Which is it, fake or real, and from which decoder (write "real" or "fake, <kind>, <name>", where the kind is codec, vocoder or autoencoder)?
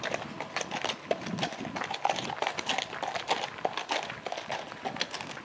real